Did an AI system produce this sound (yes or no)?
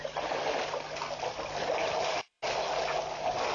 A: no